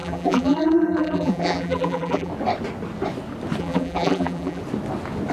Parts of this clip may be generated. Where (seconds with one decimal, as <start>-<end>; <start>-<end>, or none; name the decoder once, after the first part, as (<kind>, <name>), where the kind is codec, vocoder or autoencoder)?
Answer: 0.0-2.3 (vocoder, BigVGAN v2); 3.6-4.6